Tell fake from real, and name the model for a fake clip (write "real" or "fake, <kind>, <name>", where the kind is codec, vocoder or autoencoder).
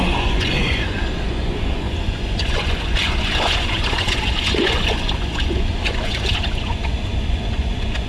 fake, vocoder, Vocos